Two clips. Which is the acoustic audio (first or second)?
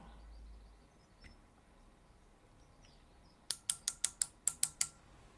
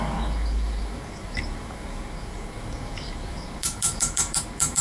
first